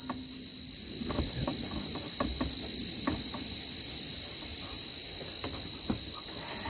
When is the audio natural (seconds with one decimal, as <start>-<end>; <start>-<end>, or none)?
0.5-1.1; 4.8-5.9